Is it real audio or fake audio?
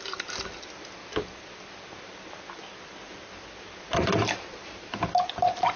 real